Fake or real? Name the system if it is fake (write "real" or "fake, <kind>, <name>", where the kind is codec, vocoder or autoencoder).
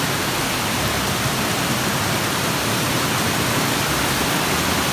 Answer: real